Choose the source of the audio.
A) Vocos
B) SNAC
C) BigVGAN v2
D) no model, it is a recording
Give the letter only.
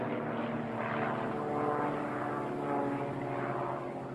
D